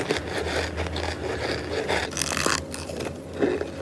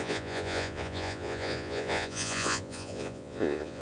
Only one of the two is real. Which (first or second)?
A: first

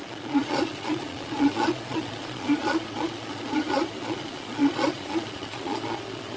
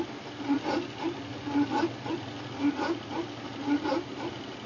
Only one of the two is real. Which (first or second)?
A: second